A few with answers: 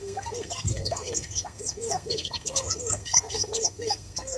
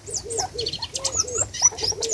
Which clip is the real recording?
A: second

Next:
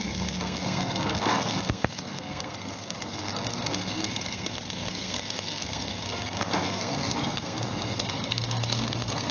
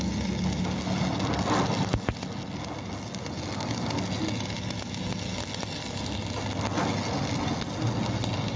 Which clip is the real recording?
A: second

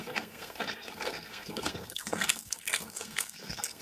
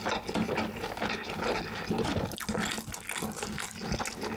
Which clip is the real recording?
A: second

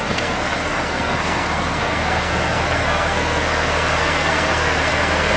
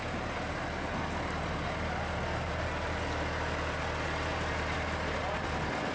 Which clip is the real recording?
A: second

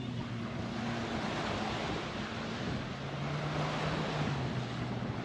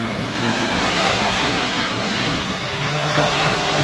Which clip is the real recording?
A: first